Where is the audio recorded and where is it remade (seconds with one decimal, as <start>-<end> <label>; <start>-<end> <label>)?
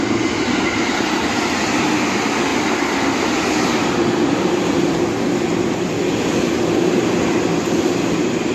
0.0-2.5 recorded; 2.5-6.1 remade; 6.1-8.5 recorded